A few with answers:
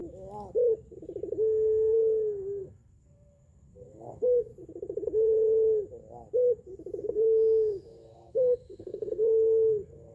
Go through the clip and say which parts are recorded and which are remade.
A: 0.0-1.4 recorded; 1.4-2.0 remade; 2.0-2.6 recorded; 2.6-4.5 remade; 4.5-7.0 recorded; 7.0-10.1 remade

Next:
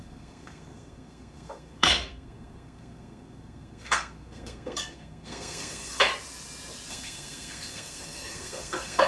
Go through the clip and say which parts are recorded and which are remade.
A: 0.0-6.1 remade; 6.1-6.9 recorded; 6.9-9.1 remade

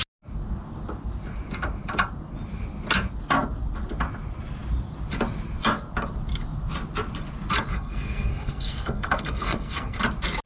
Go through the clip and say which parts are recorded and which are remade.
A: 0.0-7.7 recorded; 7.7-10.0 remade; 10.0-10.5 recorded

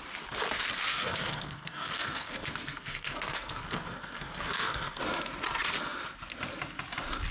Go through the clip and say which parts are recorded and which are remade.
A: 0.0-0.9 recorded; 0.9-5.0 remade; 5.0-7.3 recorded

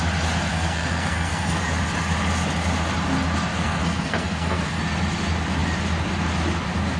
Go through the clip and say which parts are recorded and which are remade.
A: 0.0-0.5 recorded; 0.5-1.6 remade; 1.6-3.5 recorded; 3.5-4.8 remade; 4.8-7.0 recorded

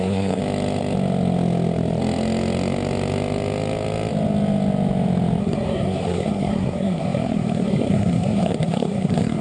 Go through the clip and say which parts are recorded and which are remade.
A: 0.0-0.4 remade; 0.4-5.4 recorded; 5.4-9.4 remade

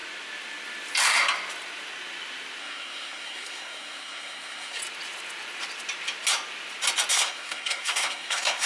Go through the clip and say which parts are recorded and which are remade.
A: 0.0-2.6 recorded; 2.6-4.8 remade; 4.8-7.1 recorded; 7.1-8.7 remade

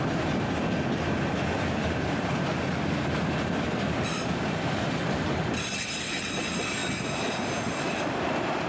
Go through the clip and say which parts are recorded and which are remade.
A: 0.0-8.7 recorded